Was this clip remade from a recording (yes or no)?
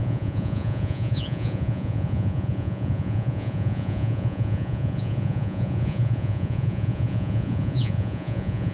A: yes